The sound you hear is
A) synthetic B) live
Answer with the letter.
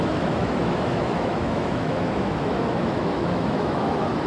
A